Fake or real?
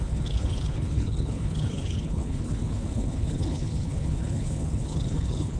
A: fake